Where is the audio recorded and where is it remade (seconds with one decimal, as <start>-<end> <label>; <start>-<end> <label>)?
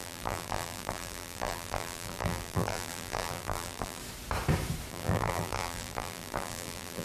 0.0-4.0 remade; 4.0-4.9 recorded; 4.9-7.0 remade